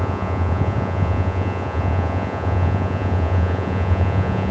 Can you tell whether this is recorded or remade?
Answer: remade